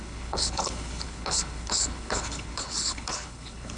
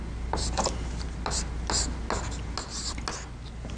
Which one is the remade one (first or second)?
first